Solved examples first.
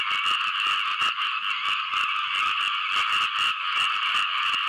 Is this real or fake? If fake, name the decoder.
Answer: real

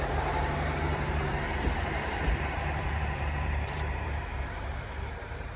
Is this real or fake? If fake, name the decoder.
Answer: fake, vocoder, BigVGAN v2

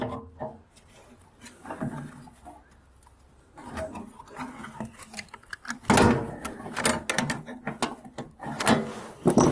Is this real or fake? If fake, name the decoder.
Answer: real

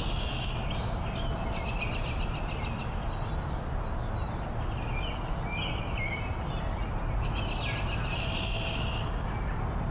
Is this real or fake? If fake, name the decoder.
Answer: real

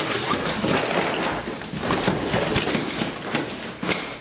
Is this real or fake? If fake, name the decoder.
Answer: real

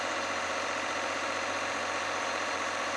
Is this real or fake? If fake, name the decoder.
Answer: fake, vocoder, BigVGAN v2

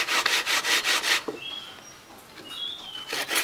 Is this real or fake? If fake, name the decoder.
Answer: real